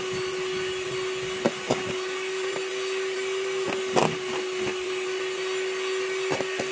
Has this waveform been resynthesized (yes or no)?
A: no